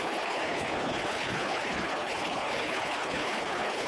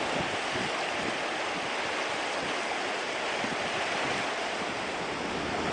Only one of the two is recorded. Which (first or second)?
second